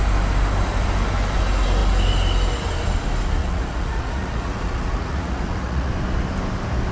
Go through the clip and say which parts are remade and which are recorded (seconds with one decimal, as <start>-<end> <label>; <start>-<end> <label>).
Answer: 0.0-3.4 recorded; 3.4-5.9 remade; 5.9-6.9 recorded